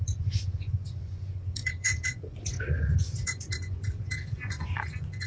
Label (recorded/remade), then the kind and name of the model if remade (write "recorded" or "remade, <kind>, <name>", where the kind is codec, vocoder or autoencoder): remade, vocoder, Vocos